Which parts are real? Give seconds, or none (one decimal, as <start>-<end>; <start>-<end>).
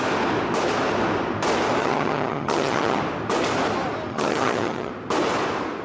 0.0-1.8; 3.0-4.1; 4.9-5.8